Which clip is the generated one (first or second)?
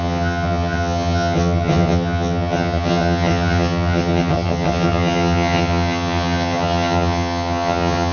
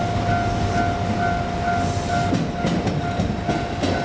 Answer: first